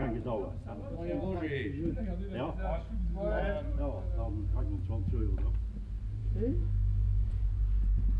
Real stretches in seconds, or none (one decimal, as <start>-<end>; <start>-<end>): 0.0-6.2; 7.3-8.2